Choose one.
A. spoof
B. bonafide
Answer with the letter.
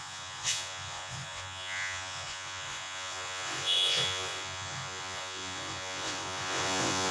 A